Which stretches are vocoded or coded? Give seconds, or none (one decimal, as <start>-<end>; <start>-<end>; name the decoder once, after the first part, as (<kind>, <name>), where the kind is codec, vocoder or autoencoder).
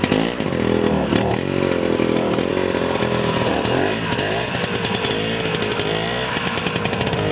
none